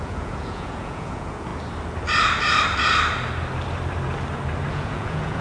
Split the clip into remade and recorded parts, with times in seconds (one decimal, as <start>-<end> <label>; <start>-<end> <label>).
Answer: 0.0-1.5 remade; 1.5-4.7 recorded; 4.7-5.4 remade